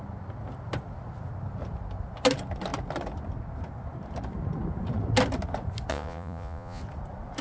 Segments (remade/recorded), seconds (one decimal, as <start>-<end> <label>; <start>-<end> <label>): 0.0-5.9 recorded; 5.9-6.8 remade; 6.8-7.4 recorded